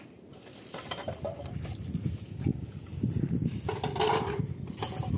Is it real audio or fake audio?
real